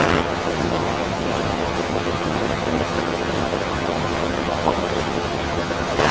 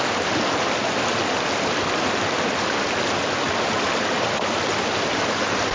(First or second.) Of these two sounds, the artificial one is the first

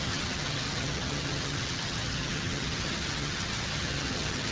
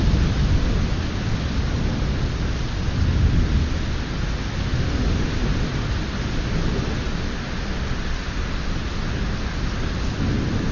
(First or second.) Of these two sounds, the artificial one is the first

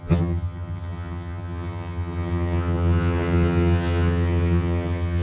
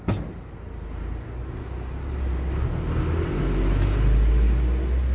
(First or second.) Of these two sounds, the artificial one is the first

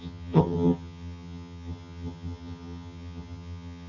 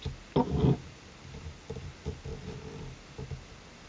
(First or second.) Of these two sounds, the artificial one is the first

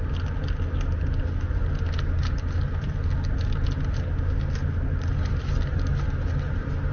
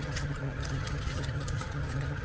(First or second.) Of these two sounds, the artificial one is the second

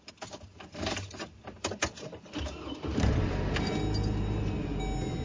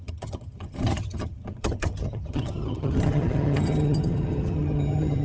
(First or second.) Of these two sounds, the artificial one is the second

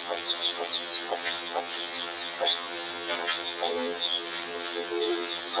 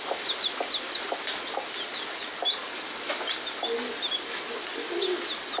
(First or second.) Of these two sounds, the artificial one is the first